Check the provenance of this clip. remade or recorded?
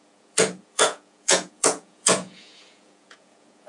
remade